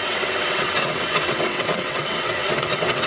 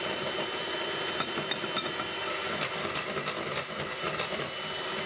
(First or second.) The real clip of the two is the second